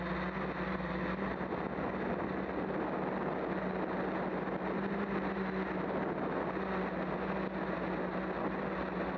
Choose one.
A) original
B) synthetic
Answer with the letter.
A